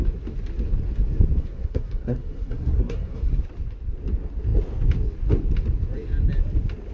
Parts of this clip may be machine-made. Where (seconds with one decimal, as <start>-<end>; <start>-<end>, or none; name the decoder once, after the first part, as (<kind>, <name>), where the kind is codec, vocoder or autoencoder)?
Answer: 1.4-3.4 (codec, SNAC)